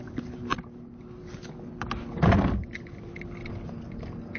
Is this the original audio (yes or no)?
yes